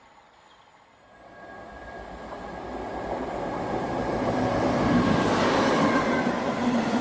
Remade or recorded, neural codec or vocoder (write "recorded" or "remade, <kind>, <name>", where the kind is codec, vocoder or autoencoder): remade, vocoder, BigVGAN v2